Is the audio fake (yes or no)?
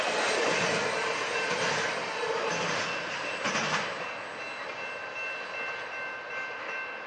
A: no